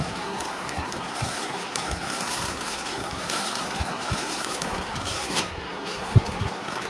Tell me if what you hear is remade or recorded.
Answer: remade